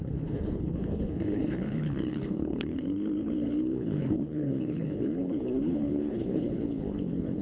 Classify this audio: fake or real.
fake